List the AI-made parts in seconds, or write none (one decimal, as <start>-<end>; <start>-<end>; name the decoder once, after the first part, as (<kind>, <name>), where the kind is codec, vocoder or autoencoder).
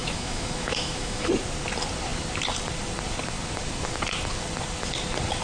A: 0.0-1.3 (autoencoder, DAC-VAE)